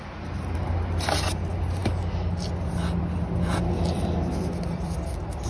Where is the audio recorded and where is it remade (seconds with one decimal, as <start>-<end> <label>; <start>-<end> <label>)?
0.0-5.5 recorded